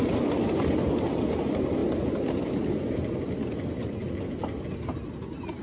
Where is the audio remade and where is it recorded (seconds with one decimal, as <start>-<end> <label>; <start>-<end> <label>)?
0.0-5.6 recorded